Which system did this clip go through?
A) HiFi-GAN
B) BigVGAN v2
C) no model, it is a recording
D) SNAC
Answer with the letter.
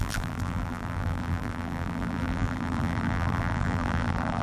B